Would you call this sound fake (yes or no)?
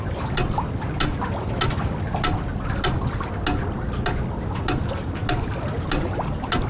no